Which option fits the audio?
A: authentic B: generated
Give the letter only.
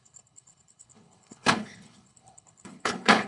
B